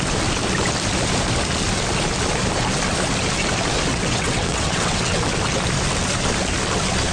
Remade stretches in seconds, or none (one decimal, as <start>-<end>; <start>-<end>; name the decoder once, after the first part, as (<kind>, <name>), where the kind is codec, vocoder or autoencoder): 3.9-5.2 (vocoder, WaveNeXt)